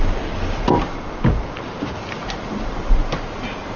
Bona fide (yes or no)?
yes